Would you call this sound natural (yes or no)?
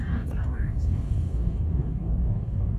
no